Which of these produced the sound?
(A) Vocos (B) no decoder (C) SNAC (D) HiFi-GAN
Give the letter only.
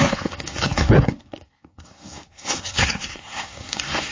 C